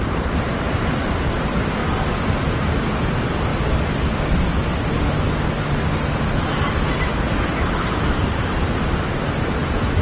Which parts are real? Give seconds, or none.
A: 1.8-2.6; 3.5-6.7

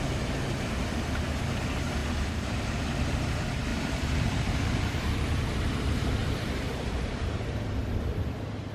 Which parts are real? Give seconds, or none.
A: 0.0-2.0; 2.6-3.7; 5.1-6.2; 7.8-8.7